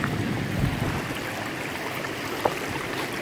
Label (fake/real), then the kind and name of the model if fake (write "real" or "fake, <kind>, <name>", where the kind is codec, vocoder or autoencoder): real